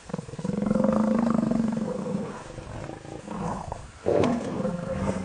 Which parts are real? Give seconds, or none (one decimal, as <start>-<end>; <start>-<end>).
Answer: 2.4-3.2